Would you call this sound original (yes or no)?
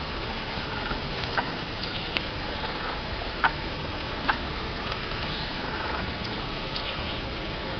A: no